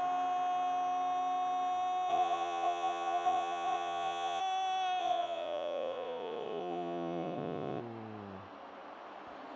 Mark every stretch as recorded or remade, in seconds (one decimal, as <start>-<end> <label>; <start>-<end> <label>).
0.0-2.1 recorded; 2.1-4.4 remade; 4.4-5.0 recorded; 5.0-7.8 remade; 7.8-9.6 recorded